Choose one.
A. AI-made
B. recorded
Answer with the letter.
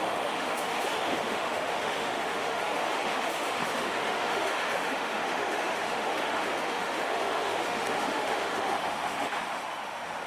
A